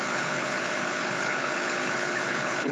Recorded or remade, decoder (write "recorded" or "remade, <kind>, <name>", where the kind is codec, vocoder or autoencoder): remade, codec, HILCodec